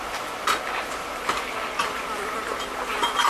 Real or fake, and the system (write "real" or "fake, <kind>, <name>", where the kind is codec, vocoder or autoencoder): real